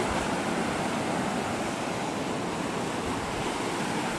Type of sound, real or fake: real